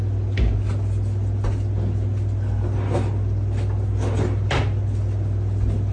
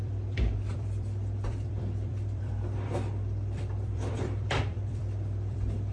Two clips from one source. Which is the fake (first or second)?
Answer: second